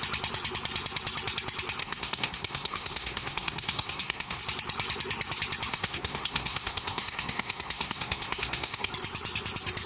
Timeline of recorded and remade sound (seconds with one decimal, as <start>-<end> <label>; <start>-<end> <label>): 0.0-1.8 recorded; 1.8-4.4 remade; 4.4-5.7 recorded; 5.7-8.9 remade; 8.9-9.9 recorded